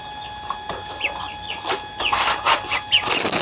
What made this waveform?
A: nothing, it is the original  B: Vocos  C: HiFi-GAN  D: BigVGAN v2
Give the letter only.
A